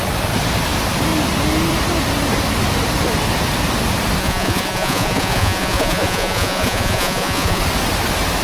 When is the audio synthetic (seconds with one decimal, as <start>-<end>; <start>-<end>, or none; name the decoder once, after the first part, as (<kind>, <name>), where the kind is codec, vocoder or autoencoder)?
4.2-7.6 (vocoder, Vocos)